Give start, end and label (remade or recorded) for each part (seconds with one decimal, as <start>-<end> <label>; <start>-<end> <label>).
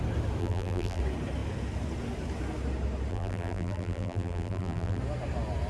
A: 0.0-0.4 recorded; 0.4-1.0 remade; 1.0-3.1 recorded; 3.1-5.0 remade; 5.0-5.7 recorded